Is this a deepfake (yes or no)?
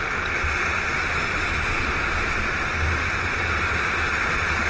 no